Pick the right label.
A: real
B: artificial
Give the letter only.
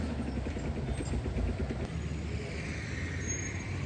A